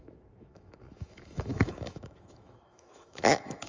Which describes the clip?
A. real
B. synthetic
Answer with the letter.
B